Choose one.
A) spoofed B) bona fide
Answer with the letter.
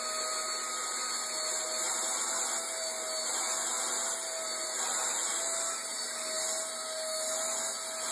B